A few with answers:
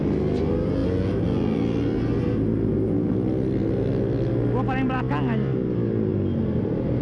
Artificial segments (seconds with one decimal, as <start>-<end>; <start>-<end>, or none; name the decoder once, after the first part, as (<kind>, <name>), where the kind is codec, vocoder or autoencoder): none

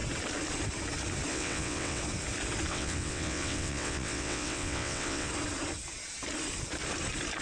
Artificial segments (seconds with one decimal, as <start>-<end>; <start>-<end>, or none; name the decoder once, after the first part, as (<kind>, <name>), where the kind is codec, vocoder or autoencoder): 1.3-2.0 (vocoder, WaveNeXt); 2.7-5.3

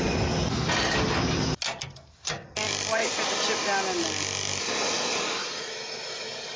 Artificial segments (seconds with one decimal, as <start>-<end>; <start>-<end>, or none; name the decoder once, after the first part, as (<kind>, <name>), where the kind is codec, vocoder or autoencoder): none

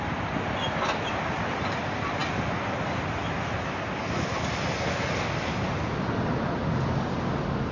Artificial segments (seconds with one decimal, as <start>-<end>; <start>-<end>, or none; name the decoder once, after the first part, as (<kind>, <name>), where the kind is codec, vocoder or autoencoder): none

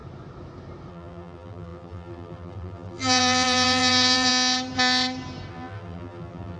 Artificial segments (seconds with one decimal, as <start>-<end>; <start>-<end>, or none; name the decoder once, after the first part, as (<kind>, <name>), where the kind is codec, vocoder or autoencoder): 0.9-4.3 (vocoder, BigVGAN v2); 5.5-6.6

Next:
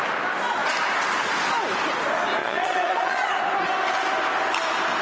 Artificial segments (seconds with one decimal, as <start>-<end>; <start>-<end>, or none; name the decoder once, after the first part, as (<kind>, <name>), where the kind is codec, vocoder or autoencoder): 2.4-3.3 (vocoder, Vocos)

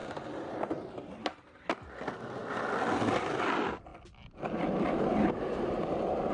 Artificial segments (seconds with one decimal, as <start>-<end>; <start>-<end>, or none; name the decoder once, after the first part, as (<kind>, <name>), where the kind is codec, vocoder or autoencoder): none

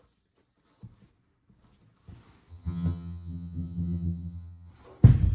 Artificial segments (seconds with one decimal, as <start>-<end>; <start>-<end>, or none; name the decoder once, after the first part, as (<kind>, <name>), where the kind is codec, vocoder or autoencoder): 2.5-4.7 (vocoder, HiFi-GAN)